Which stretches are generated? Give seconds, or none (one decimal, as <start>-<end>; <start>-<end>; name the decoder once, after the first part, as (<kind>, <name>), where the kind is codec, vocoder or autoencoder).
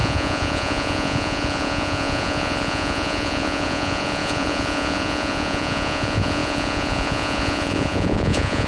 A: 0.0-8.7 (vocoder, Vocos)